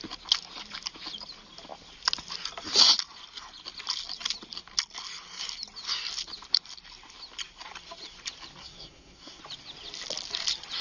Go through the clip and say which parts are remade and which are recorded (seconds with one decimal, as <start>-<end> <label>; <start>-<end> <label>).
0.0-8.6 recorded; 8.6-9.4 remade; 9.4-10.8 recorded